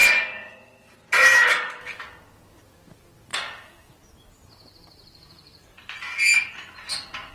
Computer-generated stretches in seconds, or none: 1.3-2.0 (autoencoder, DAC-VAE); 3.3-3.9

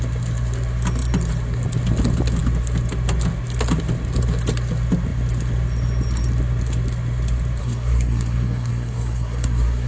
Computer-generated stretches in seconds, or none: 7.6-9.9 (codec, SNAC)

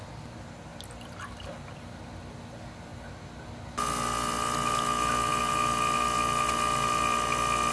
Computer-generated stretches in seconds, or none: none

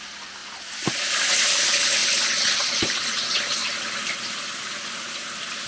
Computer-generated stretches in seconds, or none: none

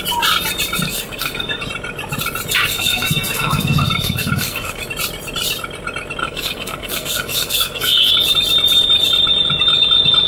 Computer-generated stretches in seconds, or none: 0.9-1.6 (codec, SNAC); 2.7-4.8; 6.2-8.1